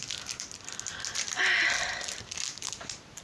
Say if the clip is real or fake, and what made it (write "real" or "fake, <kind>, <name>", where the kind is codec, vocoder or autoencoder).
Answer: real